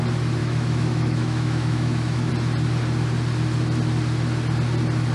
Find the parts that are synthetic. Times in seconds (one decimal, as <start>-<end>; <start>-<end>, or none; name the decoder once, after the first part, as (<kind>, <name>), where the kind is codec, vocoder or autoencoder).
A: 0.4-2.3 (autoencoder, DAC-VAE)